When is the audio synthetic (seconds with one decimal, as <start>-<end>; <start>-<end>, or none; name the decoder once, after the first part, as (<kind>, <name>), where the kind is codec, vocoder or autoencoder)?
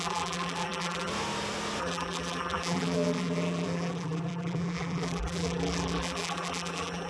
0.0-1.1 (vocoder, BigVGAN v2); 1.8-7.1